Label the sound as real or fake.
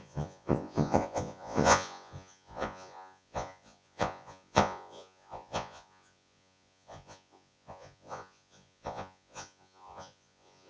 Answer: fake